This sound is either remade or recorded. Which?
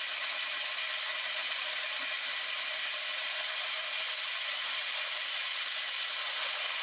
recorded